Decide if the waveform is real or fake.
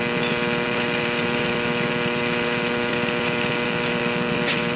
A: real